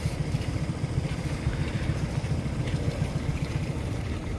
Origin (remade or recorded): remade